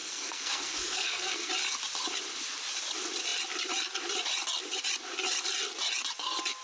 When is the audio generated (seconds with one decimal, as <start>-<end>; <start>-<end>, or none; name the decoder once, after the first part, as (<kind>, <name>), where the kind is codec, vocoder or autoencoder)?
0.0-1.5 (codec, SNAC)